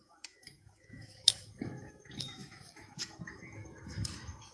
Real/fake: fake